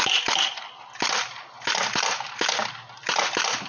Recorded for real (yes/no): yes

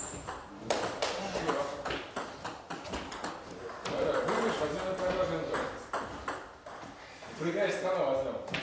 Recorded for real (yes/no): yes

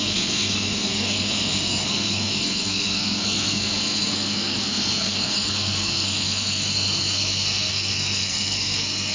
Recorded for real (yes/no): no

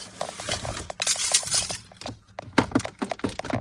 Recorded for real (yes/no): yes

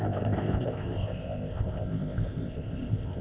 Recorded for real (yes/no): no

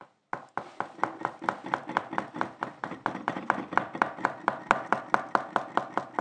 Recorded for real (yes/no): yes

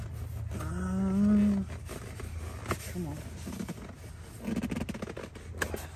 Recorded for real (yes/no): yes